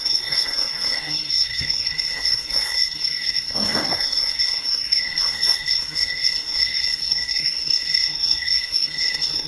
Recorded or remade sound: remade